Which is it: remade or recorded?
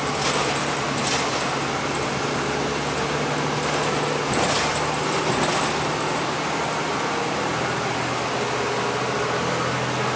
recorded